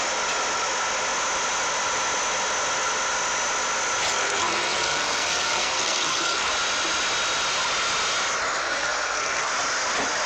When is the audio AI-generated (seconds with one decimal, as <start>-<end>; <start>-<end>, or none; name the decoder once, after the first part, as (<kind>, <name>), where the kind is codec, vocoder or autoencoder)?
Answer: 4.1-6.5 (codec, SNAC); 8.6-9.5